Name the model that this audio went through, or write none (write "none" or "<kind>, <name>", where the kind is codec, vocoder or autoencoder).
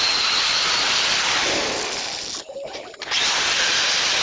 none